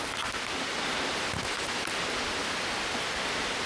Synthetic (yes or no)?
no